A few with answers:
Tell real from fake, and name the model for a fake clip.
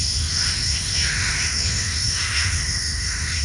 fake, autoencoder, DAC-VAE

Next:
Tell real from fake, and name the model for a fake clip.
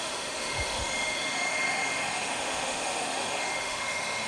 fake, autoencoder, DAC-VAE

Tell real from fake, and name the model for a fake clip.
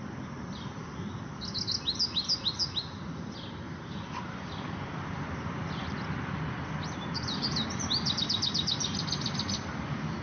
real